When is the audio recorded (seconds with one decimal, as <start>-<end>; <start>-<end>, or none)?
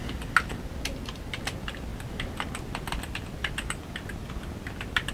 0.0-5.1